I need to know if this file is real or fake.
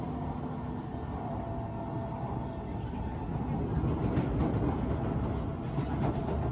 real